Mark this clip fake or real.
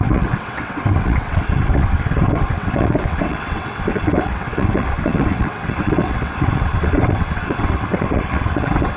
fake